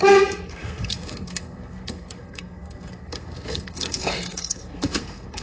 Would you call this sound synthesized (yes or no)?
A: yes